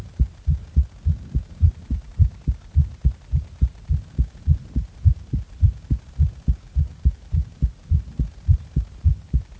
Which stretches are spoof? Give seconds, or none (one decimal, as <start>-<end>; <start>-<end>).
none